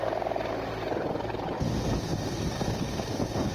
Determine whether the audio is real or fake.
real